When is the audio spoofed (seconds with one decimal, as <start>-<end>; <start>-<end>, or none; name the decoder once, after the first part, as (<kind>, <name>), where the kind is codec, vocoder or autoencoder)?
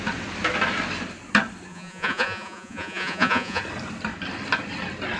1.7-3.6 (vocoder, Vocos)